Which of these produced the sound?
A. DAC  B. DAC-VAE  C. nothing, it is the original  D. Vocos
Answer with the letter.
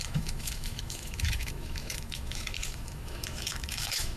B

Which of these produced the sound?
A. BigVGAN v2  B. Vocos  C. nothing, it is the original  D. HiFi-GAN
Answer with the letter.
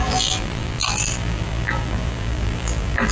A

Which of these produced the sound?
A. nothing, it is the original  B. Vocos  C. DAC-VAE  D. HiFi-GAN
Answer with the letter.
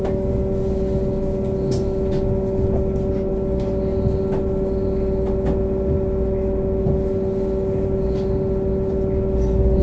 A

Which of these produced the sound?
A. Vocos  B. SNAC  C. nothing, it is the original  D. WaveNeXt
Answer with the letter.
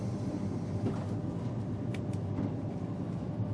C